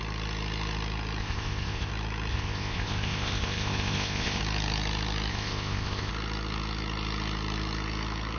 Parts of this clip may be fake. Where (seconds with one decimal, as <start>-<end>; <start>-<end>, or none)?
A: 1.2-1.9; 2.3-4.4; 5.3-6.1

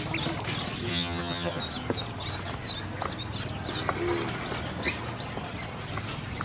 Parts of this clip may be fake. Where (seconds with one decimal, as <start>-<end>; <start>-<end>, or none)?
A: 0.9-1.6

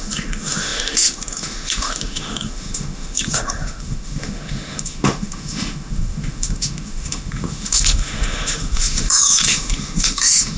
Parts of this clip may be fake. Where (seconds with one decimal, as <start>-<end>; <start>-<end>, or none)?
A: 0.0-10.6

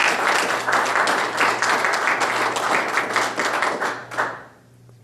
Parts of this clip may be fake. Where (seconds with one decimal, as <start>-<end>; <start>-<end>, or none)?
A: none